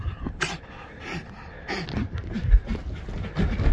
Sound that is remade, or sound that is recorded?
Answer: recorded